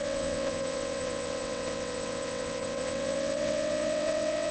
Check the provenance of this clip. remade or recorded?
remade